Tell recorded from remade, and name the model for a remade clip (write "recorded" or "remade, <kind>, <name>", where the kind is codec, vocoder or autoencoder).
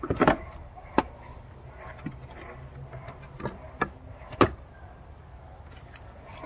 remade, vocoder, BigVGAN v2